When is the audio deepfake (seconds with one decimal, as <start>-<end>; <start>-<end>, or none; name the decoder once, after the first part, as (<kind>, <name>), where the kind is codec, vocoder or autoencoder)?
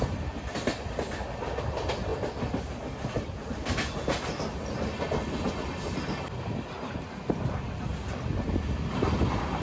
none